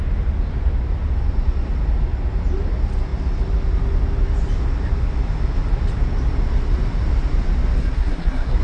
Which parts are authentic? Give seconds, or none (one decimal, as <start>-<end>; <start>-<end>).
0.0-7.8